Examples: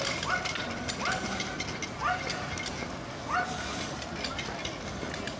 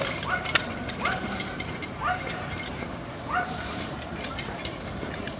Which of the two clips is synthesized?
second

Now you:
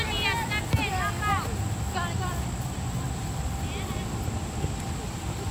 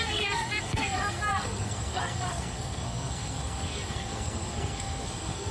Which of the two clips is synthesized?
second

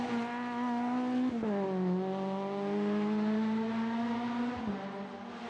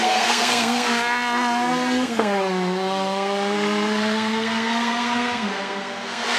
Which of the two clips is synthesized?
second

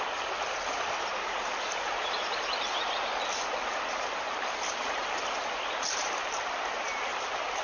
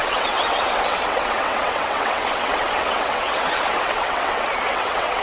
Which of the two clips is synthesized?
second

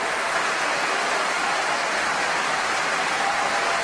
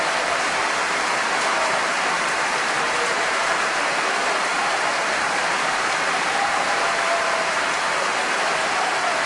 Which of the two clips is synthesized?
second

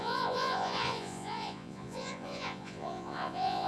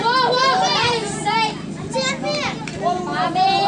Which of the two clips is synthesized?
first